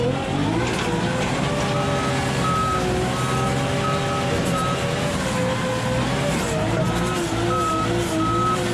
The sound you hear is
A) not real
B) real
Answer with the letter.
B